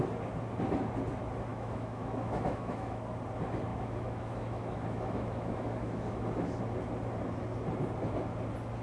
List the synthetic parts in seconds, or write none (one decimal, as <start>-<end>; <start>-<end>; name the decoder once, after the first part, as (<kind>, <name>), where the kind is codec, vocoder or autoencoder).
1.5-3.0 (autoencoder, DAC-VAE); 3.7-6.6